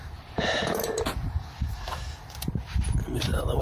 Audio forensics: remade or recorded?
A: remade